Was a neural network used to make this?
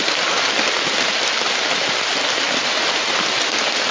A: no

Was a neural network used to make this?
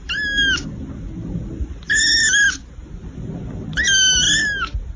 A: no